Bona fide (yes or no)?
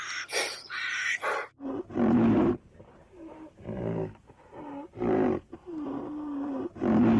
no